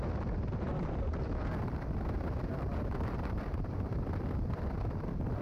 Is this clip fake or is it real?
fake